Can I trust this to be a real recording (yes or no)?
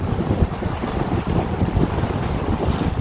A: yes